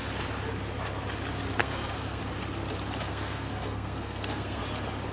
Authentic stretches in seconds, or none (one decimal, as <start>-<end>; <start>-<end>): 0.0-1.6; 2.2-3.1; 4.6-5.1